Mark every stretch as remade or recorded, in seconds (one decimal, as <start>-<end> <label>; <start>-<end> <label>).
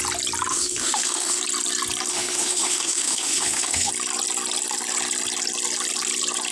0.0-0.5 recorded; 0.5-1.4 remade; 1.4-2.1 recorded; 2.1-3.9 remade; 3.9-6.5 recorded